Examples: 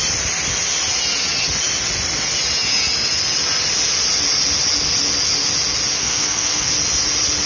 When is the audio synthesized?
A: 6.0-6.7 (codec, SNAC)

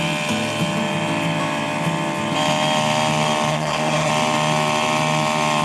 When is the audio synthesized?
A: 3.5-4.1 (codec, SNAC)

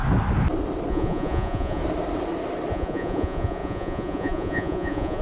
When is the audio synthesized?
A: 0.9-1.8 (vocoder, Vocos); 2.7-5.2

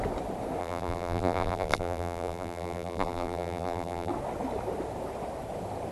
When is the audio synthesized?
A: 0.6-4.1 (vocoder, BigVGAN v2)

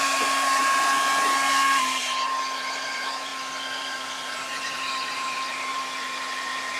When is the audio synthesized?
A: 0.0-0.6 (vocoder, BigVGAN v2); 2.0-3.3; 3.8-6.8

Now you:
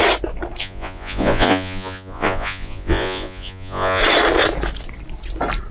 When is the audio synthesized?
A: 0.6-4.0 (vocoder, Vocos)

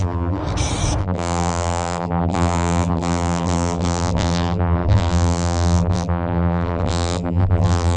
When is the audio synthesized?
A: 0.0-0.4 (vocoder, BigVGAN v2); 1.0-8.0